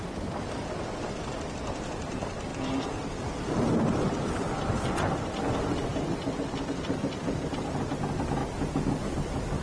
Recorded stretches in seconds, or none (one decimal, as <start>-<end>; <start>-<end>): 0.0-9.6